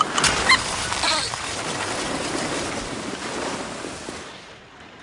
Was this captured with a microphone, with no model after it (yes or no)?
yes